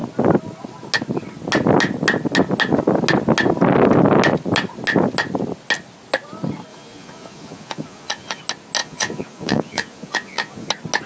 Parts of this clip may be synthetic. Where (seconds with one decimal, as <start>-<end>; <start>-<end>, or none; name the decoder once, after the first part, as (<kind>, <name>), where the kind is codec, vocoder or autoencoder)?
6.7-8.4 (vocoder, Vocos); 8.8-10.7